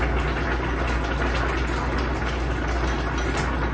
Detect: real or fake real